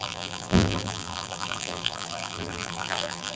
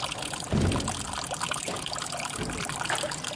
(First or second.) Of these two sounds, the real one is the second